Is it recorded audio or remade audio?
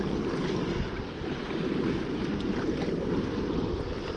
recorded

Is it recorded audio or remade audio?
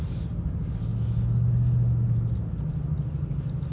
recorded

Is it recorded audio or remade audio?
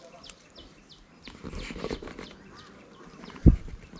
recorded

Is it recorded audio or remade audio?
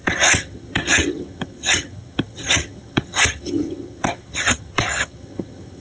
remade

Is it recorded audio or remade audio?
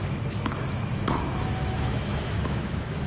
remade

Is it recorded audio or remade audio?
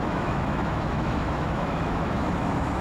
remade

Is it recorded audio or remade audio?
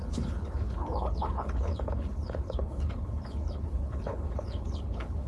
remade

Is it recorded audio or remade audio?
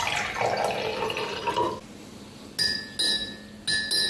recorded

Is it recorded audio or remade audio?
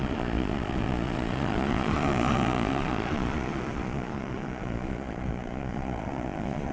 remade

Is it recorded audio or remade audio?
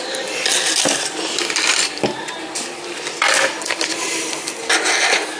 recorded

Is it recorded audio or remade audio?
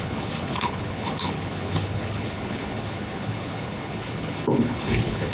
remade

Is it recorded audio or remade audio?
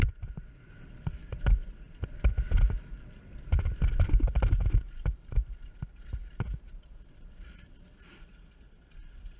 recorded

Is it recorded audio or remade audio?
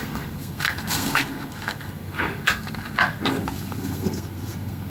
remade